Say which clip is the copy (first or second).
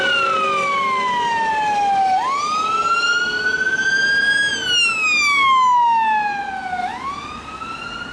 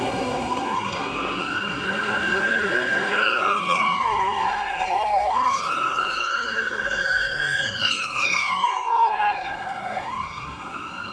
second